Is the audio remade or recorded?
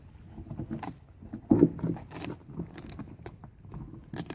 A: recorded